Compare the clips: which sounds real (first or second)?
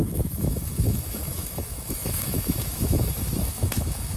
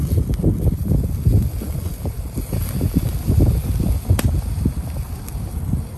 second